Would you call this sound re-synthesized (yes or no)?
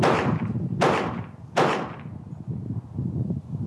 no